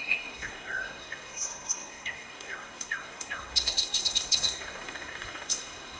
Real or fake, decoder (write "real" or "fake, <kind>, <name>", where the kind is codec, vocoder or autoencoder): fake, codec, SNAC